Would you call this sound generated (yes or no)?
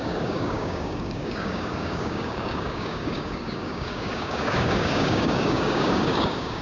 yes